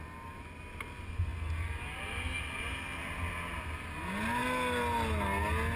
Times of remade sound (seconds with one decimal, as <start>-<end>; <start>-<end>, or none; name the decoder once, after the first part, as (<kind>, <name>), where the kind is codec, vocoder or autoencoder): none